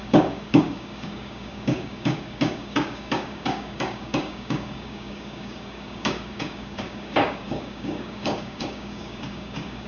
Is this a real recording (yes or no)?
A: no